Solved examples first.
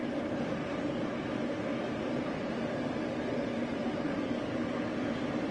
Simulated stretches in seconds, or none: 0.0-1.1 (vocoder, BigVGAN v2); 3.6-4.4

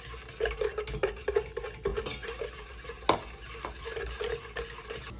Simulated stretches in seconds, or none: none

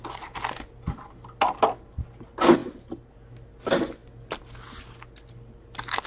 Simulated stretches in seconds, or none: 2.6-3.1 (vocoder, BigVGAN v2)